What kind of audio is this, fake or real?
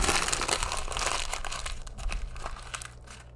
real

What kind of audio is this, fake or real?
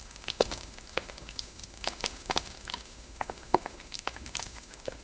fake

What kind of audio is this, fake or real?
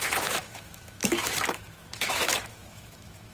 fake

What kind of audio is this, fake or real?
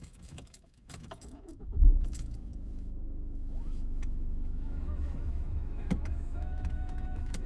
fake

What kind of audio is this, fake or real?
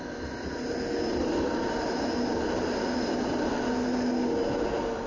real